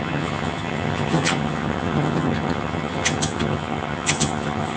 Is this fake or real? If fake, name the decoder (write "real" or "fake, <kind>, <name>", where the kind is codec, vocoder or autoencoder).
fake, vocoder, HiFi-GAN